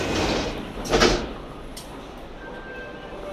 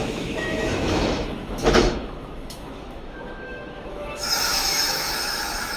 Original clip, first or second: first